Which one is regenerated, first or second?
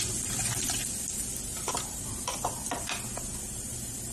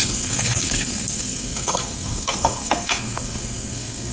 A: second